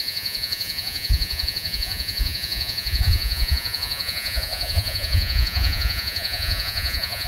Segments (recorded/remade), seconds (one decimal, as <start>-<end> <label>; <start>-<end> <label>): 0.0-7.3 remade